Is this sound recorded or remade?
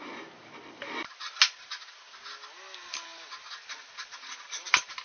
recorded